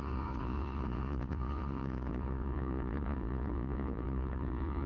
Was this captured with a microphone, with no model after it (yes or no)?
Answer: no